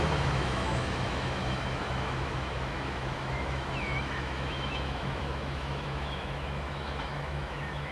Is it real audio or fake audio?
fake